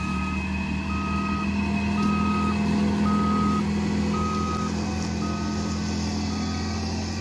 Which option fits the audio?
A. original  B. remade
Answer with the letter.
A